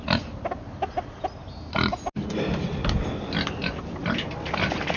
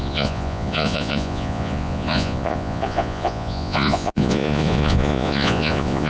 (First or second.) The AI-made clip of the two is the second